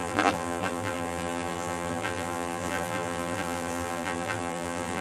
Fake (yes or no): yes